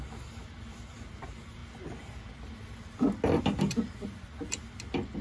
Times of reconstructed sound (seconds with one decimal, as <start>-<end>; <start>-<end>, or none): none